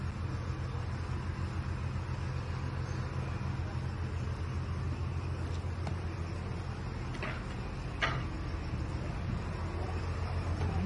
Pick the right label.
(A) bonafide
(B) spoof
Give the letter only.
A